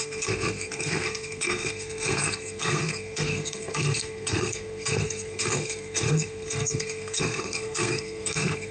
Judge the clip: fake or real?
fake